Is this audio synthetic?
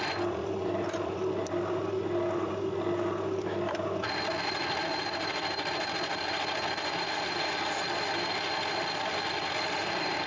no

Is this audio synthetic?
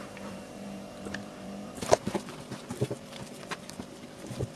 yes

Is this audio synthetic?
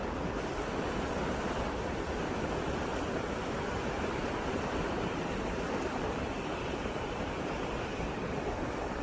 yes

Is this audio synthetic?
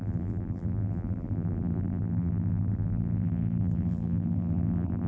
yes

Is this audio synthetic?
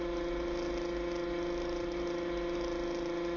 no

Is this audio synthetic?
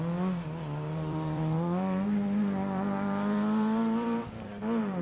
yes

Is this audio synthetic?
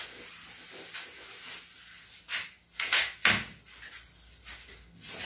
no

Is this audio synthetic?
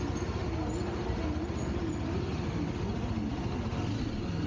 no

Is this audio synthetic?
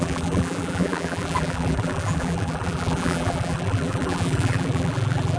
yes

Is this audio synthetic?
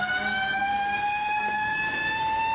yes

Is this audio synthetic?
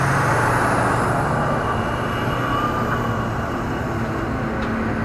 no